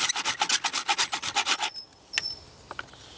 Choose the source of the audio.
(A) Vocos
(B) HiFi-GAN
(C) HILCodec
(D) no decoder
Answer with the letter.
D